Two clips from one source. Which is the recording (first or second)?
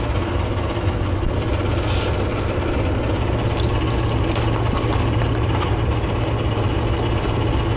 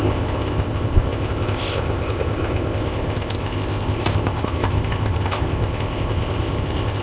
first